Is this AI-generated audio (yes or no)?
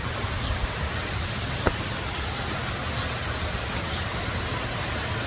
no